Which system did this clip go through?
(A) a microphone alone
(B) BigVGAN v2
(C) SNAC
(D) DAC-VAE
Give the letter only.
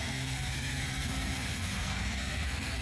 C